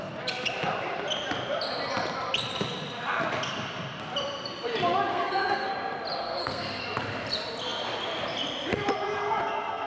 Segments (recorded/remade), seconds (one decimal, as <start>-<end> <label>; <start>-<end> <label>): 0.0-5.1 recorded; 5.1-5.7 remade; 5.7-6.2 recorded; 6.2-6.8 remade; 6.8-9.9 recorded